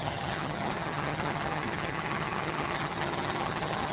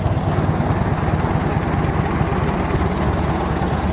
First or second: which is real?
second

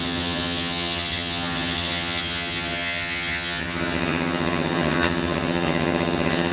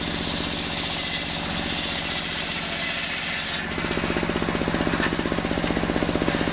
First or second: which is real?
second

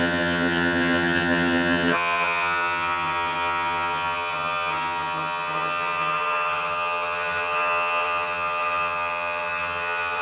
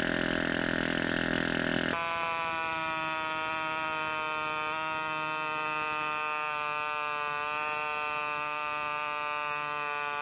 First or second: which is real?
second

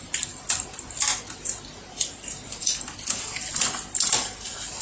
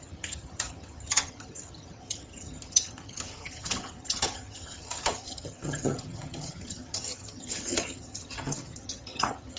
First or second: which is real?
first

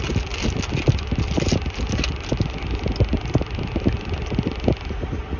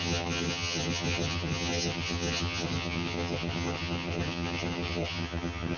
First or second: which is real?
first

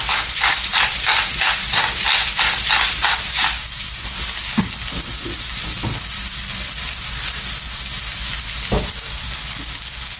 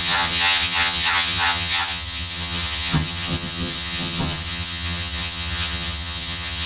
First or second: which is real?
first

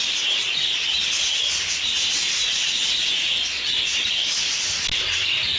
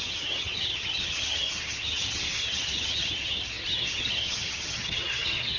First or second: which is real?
first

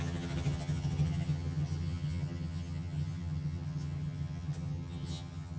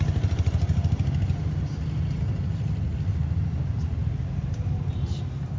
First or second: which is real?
second